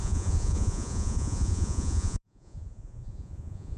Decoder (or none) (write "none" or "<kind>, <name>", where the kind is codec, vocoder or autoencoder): vocoder, Vocos